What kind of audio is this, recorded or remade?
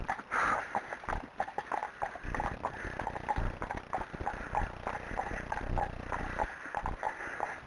remade